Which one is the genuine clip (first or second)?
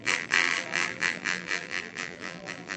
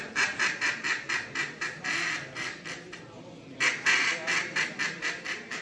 second